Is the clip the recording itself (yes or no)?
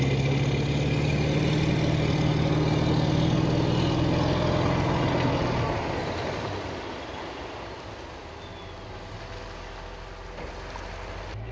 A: yes